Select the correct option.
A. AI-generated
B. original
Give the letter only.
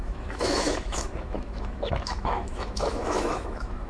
A